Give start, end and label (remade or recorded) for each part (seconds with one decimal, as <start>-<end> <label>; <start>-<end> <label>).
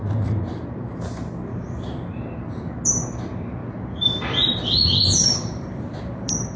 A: 0.0-3.6 recorded; 3.6-6.6 remade